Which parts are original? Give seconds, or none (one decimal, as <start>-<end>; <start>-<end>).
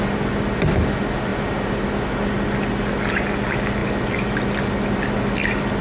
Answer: 0.0-5.8